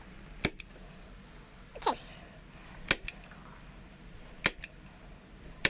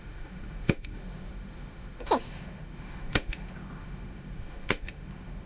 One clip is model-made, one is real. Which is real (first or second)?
first